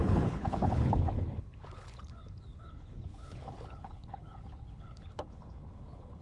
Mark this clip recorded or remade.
remade